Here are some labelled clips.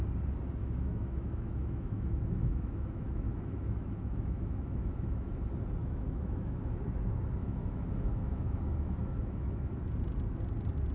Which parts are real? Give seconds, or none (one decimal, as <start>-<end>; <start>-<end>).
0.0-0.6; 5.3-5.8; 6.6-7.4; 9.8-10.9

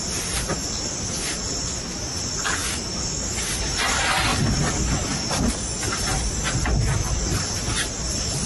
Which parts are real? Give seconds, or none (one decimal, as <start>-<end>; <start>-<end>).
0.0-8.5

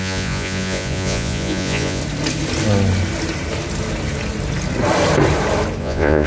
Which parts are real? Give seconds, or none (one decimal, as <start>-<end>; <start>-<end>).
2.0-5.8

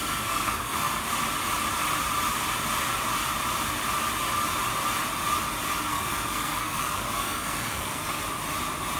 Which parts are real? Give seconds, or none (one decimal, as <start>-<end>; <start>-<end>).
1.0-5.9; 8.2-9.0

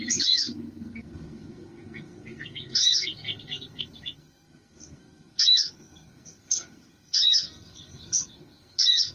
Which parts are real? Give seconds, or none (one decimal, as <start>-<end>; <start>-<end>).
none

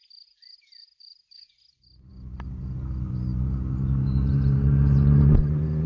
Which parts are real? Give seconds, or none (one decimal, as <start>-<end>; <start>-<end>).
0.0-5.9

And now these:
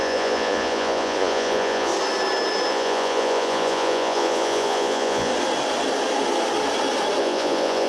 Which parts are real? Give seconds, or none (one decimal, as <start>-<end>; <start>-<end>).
1.9-2.7; 5.3-7.2